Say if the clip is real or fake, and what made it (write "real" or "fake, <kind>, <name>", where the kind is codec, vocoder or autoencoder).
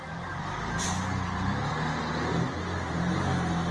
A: real